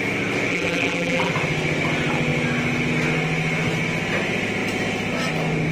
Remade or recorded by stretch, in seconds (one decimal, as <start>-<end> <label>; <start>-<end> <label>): 0.0-0.5 recorded; 0.5-1.3 remade; 1.3-5.7 recorded